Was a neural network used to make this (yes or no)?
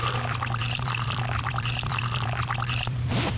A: yes